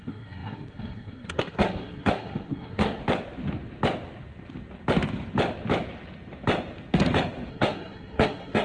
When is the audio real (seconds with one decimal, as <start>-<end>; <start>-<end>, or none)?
3.0-7.5